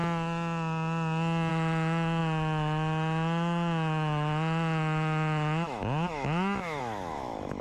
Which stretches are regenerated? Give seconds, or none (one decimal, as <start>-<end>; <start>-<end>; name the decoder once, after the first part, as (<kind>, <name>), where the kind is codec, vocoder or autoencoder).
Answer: 1.5-7.6 (autoencoder, DAC-VAE)